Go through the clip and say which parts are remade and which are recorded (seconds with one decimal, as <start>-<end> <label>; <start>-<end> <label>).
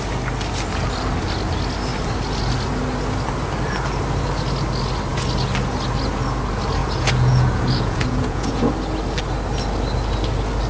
0.0-6.8 recorded; 6.8-8.7 remade; 8.7-10.7 recorded